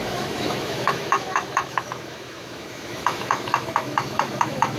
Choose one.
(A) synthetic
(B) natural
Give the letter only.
A